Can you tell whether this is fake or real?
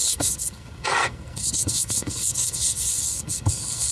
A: fake